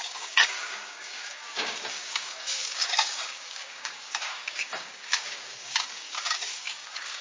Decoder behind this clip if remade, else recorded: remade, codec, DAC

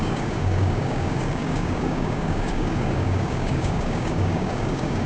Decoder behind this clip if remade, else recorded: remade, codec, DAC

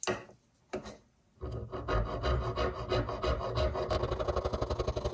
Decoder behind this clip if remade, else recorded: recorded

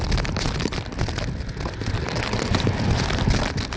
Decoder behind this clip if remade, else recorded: recorded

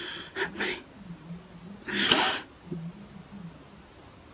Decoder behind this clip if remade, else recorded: recorded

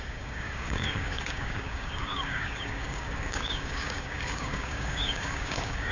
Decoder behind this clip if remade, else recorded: remade, codec, DAC